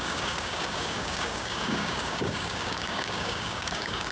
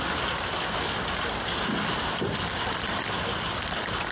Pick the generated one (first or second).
first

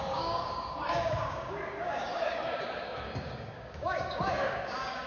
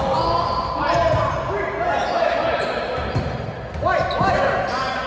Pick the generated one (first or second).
first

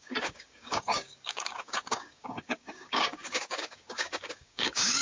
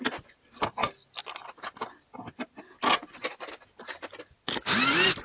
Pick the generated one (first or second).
first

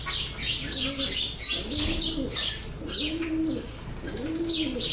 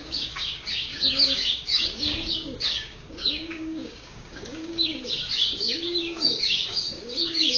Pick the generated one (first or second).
second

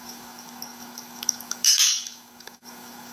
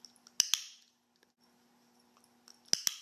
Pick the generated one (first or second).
first